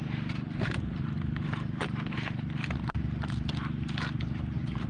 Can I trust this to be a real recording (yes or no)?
no